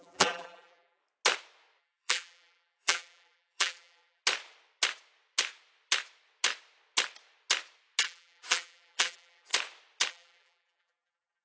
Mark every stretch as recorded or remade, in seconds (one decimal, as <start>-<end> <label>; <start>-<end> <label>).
0.0-1.0 remade; 1.0-1.8 recorded; 1.8-4.2 remade; 4.2-8.0 recorded; 8.0-9.5 remade; 9.5-10.1 recorded; 10.1-11.4 remade